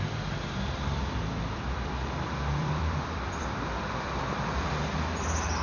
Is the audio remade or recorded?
remade